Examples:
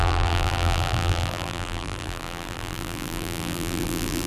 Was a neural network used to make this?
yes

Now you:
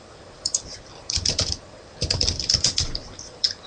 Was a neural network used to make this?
yes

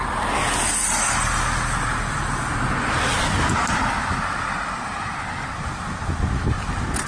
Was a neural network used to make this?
no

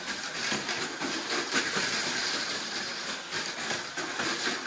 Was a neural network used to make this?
no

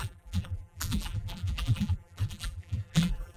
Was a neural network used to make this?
yes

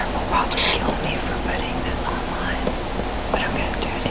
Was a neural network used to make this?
no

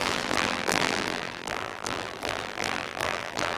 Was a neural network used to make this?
yes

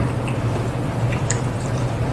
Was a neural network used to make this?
yes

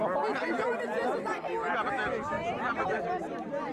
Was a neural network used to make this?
no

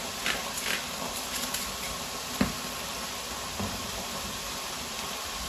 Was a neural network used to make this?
yes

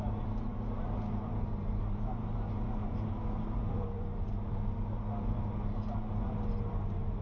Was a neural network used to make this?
yes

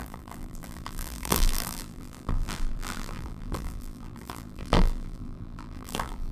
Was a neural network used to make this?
yes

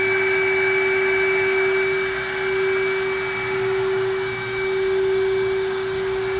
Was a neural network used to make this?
no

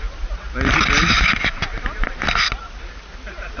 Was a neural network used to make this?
no